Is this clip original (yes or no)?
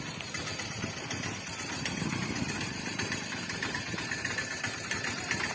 no